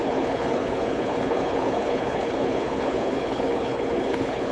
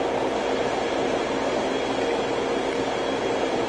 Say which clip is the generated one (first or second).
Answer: first